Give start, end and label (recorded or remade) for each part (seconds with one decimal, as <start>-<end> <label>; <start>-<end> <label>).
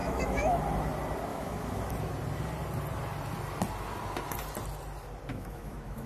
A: 0.0-0.6 remade; 0.6-1.3 recorded; 1.3-1.8 remade; 1.8-5.3 recorded; 5.3-6.1 remade